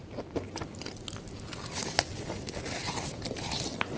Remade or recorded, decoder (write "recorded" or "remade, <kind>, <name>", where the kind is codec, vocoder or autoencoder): recorded